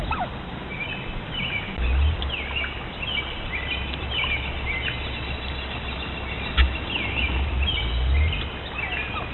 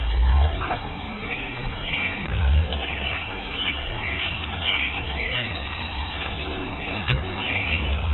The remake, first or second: second